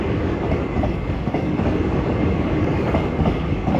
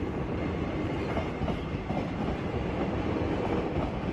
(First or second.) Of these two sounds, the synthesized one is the first